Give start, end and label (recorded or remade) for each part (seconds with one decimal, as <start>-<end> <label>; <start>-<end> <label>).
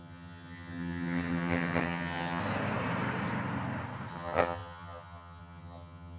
0.0-2.4 remade; 2.4-4.1 recorded; 4.1-6.2 remade